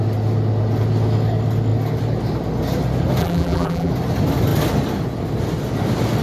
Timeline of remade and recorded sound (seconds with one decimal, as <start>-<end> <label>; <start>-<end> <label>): 0.0-3.2 recorded; 3.2-3.9 remade; 3.9-6.2 recorded